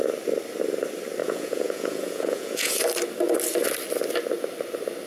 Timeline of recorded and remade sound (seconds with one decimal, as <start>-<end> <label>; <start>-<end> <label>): 0.0-1.2 recorded; 1.2-2.8 remade; 2.8-5.1 recorded